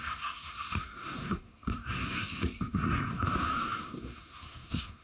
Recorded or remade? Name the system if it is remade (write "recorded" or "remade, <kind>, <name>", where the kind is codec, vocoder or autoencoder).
remade, codec, SNAC